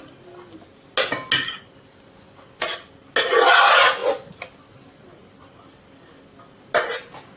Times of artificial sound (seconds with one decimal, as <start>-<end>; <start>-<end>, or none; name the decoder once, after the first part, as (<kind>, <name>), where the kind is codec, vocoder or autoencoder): none